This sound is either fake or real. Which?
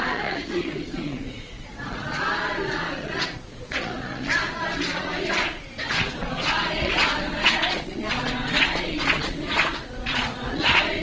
fake